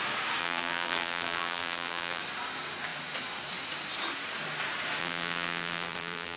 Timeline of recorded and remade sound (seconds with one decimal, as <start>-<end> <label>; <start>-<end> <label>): 0.0-0.4 recorded; 0.4-2.2 remade; 2.2-5.0 recorded; 5.0-6.4 remade